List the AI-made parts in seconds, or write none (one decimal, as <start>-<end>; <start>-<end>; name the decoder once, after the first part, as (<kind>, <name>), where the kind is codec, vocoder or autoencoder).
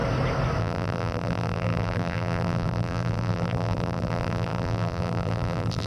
0.6-5.9 (vocoder, BigVGAN v2)